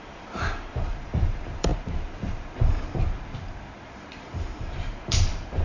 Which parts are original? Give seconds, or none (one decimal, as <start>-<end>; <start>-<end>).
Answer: 1.7-3.9